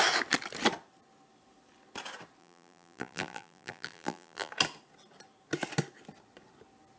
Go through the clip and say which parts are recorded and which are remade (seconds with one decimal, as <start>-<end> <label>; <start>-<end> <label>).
0.0-2.4 recorded; 2.4-4.5 remade; 4.5-7.0 recorded